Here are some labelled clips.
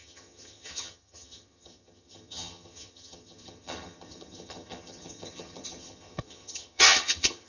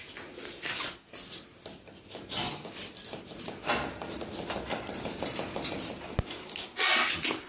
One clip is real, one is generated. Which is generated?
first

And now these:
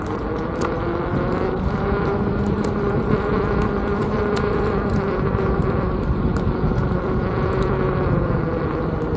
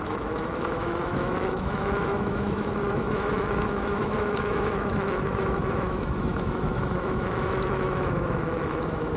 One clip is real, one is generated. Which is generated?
second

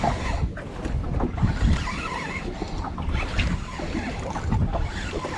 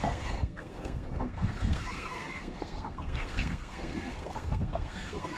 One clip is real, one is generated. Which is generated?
second